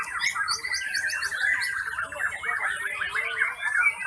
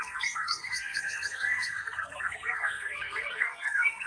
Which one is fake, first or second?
second